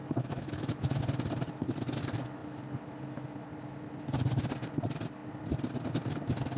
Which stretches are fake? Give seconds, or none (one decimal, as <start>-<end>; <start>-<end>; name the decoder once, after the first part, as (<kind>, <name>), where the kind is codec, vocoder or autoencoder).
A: 0.0-1.0 (autoencoder, DAC-VAE)